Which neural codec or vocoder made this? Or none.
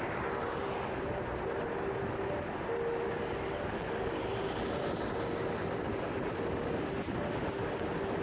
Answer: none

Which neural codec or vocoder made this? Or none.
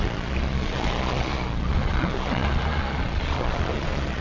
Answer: vocoder, Vocos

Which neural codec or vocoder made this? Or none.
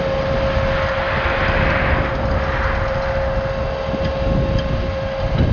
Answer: none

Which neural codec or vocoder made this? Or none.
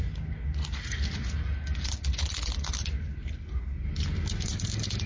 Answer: none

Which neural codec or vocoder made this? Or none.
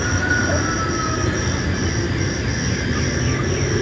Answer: none